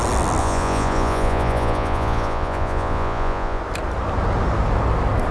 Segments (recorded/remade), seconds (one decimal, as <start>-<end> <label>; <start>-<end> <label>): 0.0-0.4 recorded; 0.4-3.6 remade; 3.6-5.3 recorded